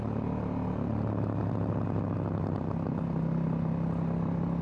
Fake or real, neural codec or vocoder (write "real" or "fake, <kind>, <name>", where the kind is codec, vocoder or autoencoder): real